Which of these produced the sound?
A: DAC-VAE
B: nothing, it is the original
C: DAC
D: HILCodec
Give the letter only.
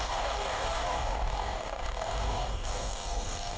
C